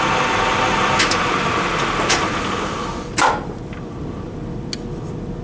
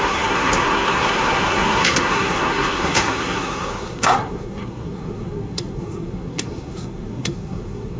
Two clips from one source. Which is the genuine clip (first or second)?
first